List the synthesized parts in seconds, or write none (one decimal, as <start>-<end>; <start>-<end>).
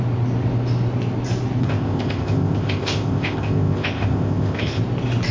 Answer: 1.6-4.8